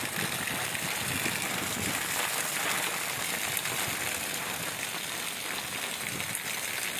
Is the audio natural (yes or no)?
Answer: yes